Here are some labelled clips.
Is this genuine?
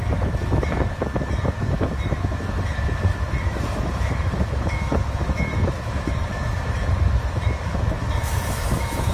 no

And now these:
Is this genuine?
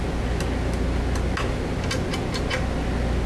yes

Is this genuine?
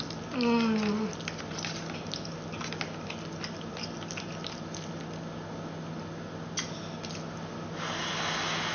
yes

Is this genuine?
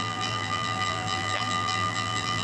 no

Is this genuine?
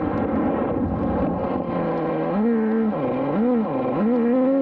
yes